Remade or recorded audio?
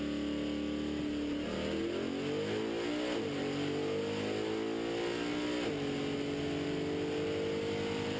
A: recorded